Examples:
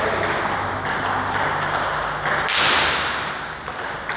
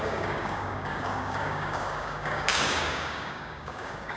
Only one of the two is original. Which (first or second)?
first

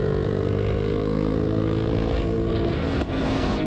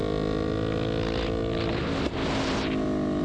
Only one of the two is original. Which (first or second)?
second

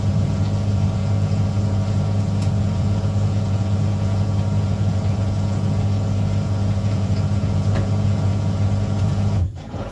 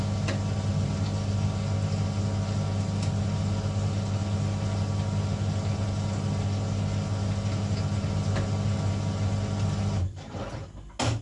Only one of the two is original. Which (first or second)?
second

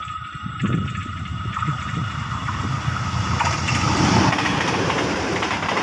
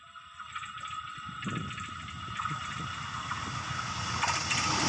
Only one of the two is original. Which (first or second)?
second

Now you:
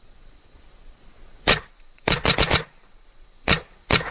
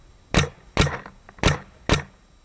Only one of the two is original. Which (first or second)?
second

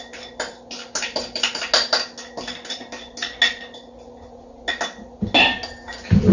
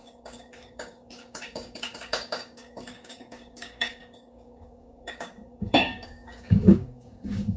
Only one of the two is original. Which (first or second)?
first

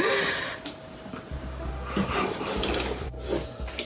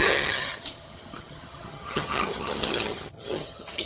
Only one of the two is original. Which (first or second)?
first